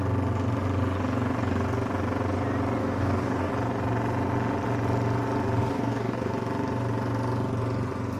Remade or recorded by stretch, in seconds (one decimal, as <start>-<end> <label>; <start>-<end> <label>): 0.0-2.8 recorded; 2.8-3.5 remade; 3.5-5.6 recorded; 5.6-6.3 remade; 6.3-8.2 recorded